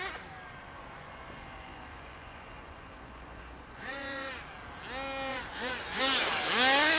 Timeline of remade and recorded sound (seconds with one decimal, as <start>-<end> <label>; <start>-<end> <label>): 0.0-0.8 recorded; 0.8-4.3 remade; 4.3-5.3 recorded; 5.3-6.0 remade; 6.0-7.0 recorded